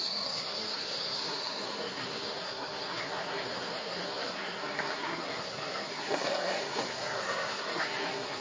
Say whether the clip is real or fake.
fake